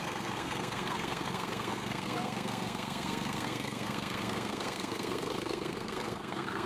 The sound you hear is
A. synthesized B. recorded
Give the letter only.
A